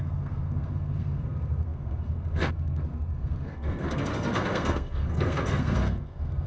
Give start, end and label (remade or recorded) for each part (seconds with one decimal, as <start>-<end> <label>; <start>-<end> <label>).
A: 0.0-6.5 remade